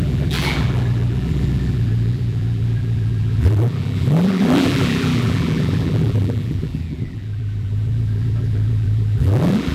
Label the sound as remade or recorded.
remade